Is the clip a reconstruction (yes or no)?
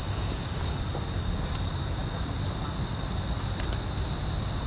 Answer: no